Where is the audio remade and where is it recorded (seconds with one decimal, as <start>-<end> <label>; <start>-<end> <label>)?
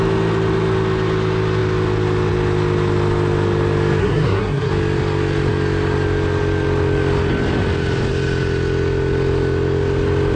0.0-4.0 recorded; 4.0-4.7 remade; 4.7-10.4 recorded